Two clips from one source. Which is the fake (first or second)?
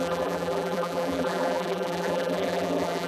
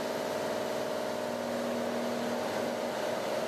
first